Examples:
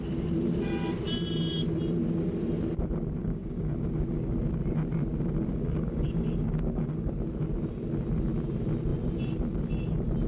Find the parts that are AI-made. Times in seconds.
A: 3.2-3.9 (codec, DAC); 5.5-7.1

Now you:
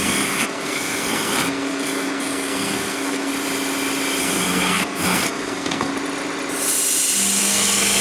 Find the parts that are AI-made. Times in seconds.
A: 0.0-3.3 (codec, SNAC); 4.2-5.9; 7.4-8.0

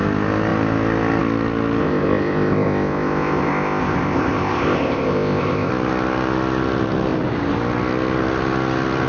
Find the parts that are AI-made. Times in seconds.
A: 1.8-5.7 (codec, ZipCodec)

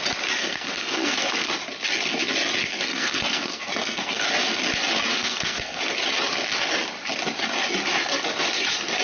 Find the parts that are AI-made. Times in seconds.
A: 0.4-1.5 (codec, SNAC); 2.6-4.3; 5.1-5.8